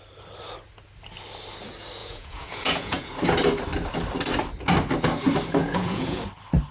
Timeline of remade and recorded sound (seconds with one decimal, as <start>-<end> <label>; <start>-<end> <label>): 0.0-2.0 recorded; 2.0-3.1 remade; 3.1-5.6 recorded; 5.6-6.2 remade; 6.2-6.7 recorded